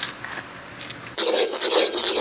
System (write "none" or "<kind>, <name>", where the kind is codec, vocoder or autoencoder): none